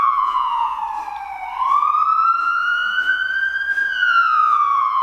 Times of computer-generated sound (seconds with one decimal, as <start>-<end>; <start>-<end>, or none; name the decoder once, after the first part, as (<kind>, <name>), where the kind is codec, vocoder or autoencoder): 0.0-0.8 (vocoder, Vocos); 2.4-3.2; 3.8-5.0